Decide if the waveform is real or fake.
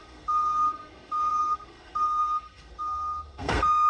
fake